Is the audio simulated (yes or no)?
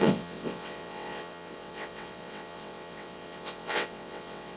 yes